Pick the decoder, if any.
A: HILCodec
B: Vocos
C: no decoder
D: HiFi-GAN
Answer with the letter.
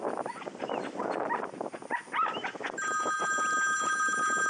C